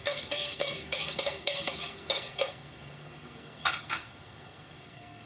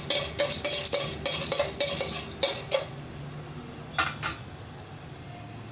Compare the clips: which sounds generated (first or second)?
first